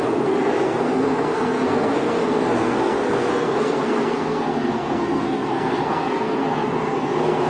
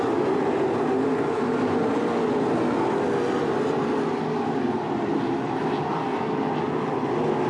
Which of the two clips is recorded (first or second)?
second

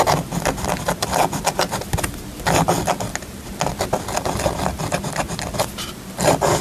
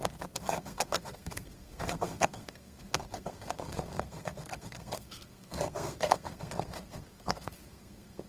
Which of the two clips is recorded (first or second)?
first